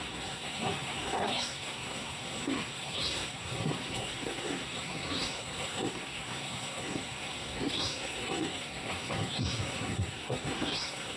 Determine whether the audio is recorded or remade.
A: remade